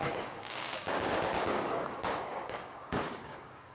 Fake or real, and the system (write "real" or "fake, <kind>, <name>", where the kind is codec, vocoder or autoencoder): fake, codec, DAC